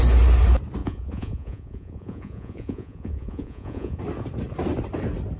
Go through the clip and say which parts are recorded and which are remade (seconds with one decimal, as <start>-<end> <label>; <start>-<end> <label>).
0.0-0.8 recorded; 0.8-4.0 remade; 4.0-5.4 recorded